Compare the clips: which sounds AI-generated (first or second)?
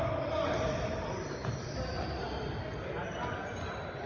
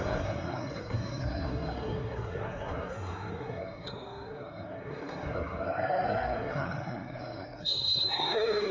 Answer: second